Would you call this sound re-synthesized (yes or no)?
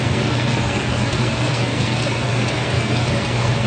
yes